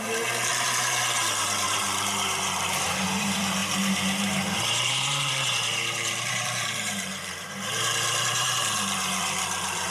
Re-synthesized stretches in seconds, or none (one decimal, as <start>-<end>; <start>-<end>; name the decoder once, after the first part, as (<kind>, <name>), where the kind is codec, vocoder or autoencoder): 0.0-9.9 (vocoder, BigVGAN v2)